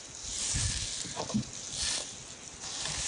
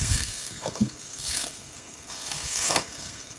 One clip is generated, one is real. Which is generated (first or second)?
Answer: second